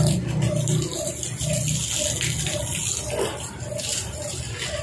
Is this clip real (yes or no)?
yes